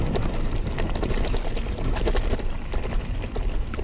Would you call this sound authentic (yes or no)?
yes